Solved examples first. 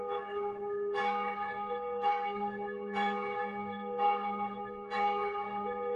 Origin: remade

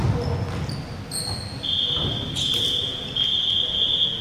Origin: recorded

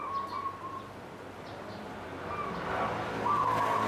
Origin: recorded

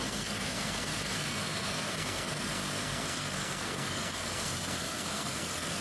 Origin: remade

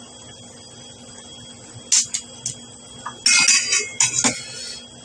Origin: recorded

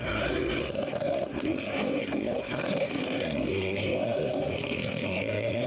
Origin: remade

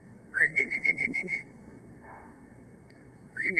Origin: remade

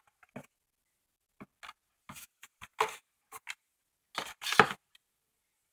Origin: recorded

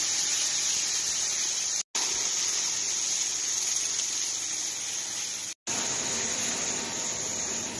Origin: recorded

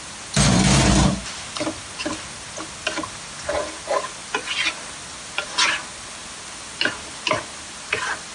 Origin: recorded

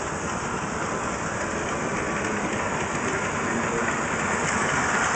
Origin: recorded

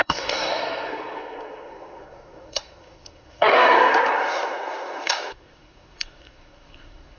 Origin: remade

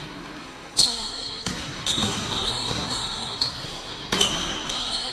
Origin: remade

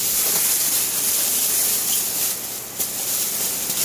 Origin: recorded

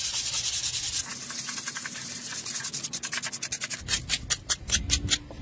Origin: recorded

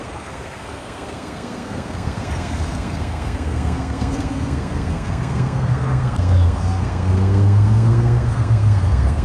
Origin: remade